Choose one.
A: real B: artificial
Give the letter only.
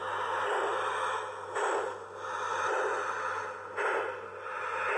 A